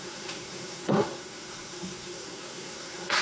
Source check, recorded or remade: remade